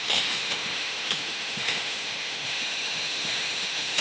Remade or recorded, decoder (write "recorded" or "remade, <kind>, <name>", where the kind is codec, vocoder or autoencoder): remade, autoencoder, DAC-VAE